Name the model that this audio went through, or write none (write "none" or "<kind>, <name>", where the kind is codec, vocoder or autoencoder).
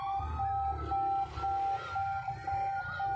none